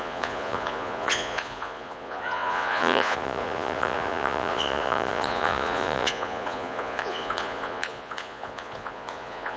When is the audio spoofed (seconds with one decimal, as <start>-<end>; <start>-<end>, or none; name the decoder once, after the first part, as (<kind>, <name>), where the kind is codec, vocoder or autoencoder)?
0.0-9.6 (vocoder, Vocos)